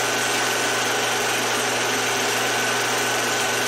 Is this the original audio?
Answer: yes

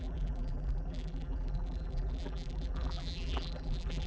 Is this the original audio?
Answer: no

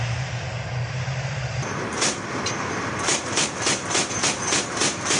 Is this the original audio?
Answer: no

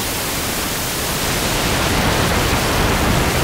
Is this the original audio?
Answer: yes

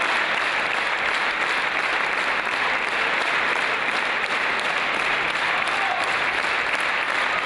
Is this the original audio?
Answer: no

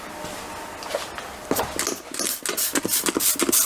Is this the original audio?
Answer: yes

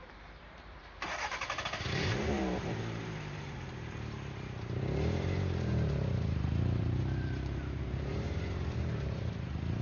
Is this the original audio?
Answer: no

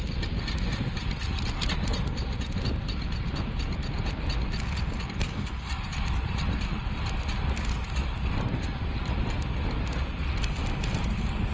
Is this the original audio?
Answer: yes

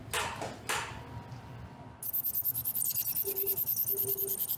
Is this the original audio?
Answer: yes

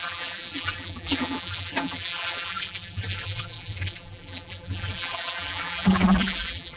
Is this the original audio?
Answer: no